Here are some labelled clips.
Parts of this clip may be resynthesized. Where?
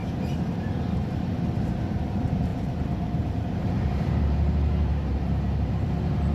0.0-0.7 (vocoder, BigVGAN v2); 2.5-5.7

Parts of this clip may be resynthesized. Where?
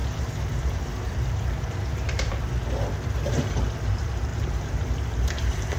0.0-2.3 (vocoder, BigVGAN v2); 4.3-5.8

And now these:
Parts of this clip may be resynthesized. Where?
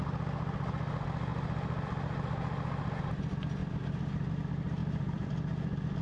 3.6-4.3 (vocoder, BigVGAN v2); 4.8-5.3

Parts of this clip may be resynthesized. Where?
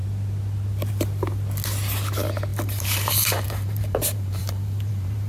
2.5-5.3 (vocoder, BigVGAN v2)